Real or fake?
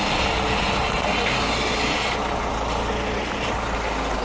real